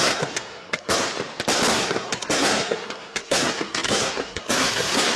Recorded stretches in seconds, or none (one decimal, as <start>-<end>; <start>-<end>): 1.1-1.7